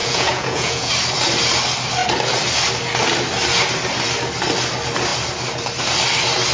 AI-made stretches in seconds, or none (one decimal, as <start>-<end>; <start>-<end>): 0.0-0.9